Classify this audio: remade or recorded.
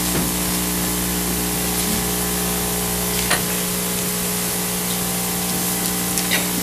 recorded